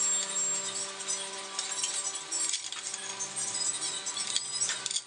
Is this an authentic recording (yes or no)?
yes